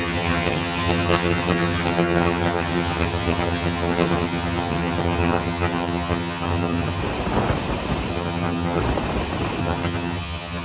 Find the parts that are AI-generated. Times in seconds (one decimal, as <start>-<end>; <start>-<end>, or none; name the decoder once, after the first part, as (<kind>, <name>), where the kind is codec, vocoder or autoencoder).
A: 0.0-7.0 (vocoder, HiFi-GAN); 8.1-8.8; 9.6-10.6